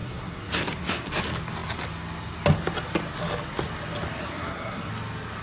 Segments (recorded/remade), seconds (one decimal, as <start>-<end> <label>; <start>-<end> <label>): 0.0-1.2 remade; 1.2-4.2 recorded; 4.2-4.9 remade; 4.9-5.4 recorded